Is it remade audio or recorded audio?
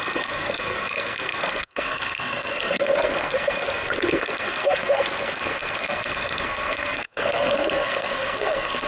remade